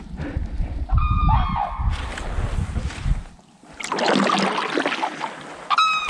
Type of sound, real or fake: real